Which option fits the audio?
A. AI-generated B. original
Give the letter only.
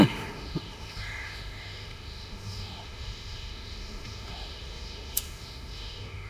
A